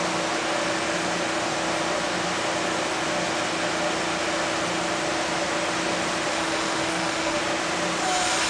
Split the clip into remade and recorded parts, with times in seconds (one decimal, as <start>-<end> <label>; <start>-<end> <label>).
0.0-6.3 recorded; 6.3-7.4 remade; 7.4-8.5 recorded